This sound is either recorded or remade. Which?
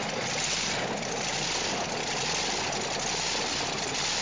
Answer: recorded